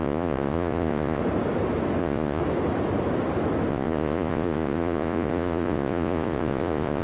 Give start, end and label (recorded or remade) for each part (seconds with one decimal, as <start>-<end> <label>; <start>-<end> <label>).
0.0-1.2 remade; 1.2-2.0 recorded; 2.0-2.4 remade; 2.4-3.7 recorded; 3.7-7.0 remade